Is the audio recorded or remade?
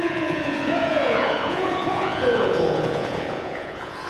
remade